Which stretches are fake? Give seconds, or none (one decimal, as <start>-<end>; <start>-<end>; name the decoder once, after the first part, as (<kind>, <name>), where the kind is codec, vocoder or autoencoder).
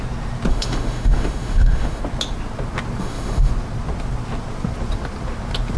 0.5-2.0 (autoencoder, DAC-VAE); 3.0-3.5